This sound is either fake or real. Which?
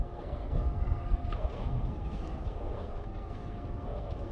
fake